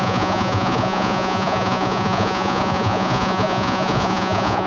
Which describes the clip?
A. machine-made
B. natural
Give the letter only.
A